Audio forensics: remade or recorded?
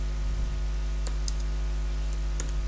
recorded